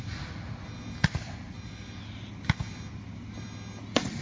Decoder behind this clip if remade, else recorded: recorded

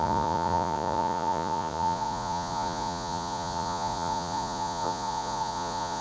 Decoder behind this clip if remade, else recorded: remade, vocoder, Vocos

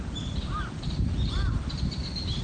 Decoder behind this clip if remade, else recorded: recorded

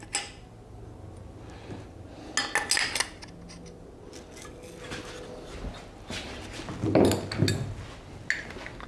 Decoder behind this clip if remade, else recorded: recorded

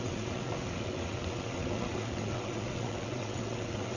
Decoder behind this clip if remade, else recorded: remade, vocoder, WaveNeXt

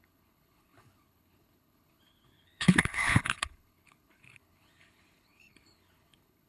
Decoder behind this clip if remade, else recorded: remade, codec, HILCodec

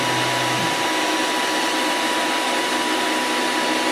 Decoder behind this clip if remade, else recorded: recorded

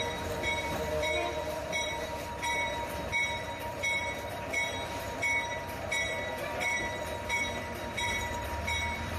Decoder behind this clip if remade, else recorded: remade, vocoder, BigVGAN v2